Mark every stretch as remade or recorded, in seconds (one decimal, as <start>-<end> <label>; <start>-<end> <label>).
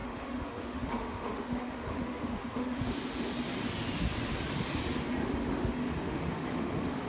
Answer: 0.0-2.8 remade; 2.8-5.4 recorded; 5.4-7.1 remade